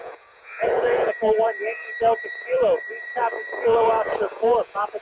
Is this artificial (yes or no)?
yes